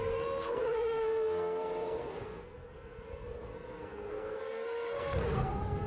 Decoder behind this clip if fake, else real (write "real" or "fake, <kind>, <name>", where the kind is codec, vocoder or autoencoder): fake, codec, SNAC